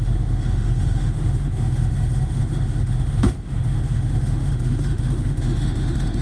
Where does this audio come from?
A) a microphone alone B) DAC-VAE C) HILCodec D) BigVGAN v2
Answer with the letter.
B